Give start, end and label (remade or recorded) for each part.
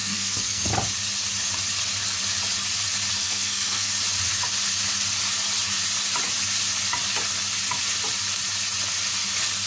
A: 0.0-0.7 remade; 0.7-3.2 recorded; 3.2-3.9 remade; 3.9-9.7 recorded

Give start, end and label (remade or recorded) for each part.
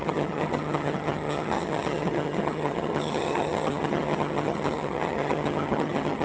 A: 0.0-6.2 remade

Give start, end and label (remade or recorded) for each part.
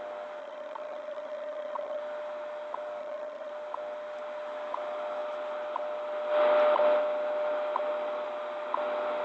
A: 0.0-0.4 recorded; 0.4-2.0 remade; 2.0-3.0 recorded; 3.0-3.5 remade; 3.5-9.2 recorded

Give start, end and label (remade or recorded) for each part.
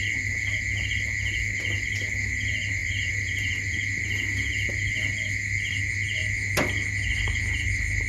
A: 0.0-8.1 recorded